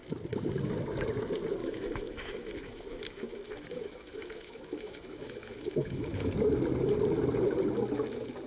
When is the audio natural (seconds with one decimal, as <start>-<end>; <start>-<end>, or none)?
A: 0.0-1.6; 6.3-8.5